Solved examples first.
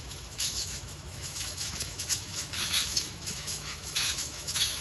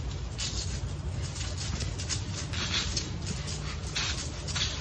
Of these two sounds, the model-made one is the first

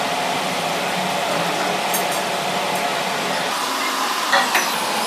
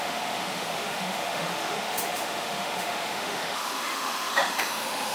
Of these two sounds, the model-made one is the second